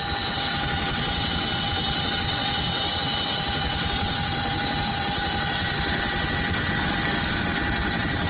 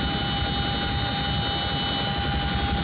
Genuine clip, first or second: second